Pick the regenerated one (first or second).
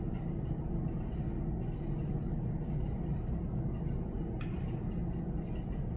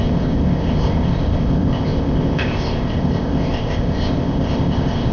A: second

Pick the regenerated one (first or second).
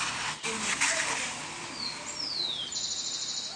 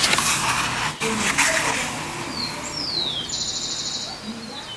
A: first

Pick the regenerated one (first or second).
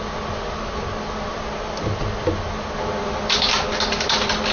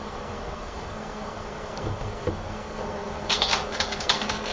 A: second